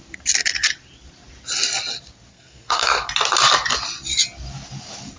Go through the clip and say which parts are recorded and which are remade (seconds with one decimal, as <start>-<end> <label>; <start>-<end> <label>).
0.0-2.3 recorded; 2.3-3.1 remade; 3.1-5.2 recorded